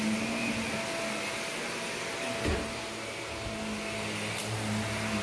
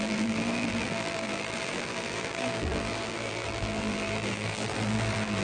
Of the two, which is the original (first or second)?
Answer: first